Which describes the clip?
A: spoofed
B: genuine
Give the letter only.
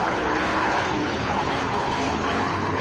A